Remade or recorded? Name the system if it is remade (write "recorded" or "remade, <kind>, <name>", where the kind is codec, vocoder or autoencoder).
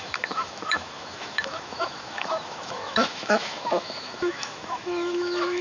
remade, autoencoder, DAC-VAE